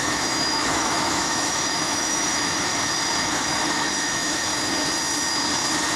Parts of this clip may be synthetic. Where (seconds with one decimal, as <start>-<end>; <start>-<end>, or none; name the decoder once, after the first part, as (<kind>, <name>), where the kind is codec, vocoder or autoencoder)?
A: 0.0-2.7 (autoencoder, DAC-VAE); 3.2-4.5